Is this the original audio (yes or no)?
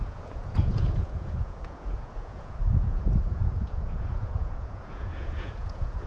no